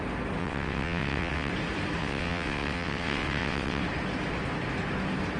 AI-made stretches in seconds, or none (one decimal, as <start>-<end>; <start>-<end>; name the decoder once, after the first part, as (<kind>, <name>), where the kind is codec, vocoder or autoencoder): 0.4-1.5 (vocoder, WaveNeXt); 2.0-3.8